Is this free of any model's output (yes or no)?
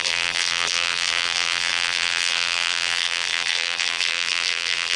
no